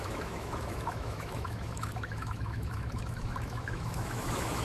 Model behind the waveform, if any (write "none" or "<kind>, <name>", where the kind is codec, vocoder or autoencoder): autoencoder, DAC-VAE